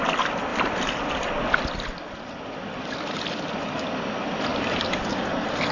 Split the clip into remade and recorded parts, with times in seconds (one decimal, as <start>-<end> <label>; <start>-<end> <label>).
0.0-4.5 recorded; 4.5-5.7 remade